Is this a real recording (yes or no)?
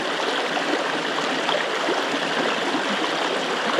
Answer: yes